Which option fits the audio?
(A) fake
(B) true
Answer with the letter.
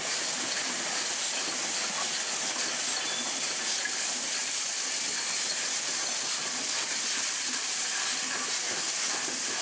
B